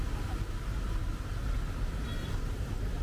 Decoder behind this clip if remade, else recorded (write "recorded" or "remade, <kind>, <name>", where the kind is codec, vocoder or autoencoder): recorded